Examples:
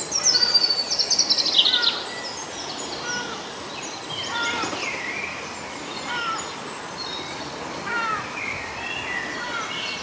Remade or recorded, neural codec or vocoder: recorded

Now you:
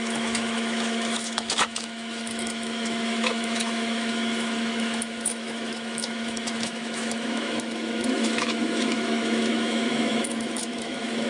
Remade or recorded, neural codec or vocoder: remade, autoencoder, DAC-VAE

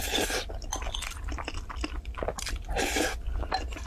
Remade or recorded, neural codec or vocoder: recorded